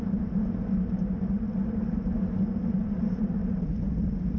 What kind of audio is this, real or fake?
real